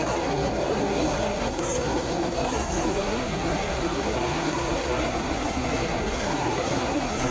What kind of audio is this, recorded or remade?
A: remade